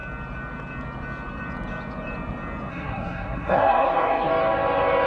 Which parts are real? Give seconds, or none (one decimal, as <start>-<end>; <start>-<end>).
0.0-2.7; 4.3-5.1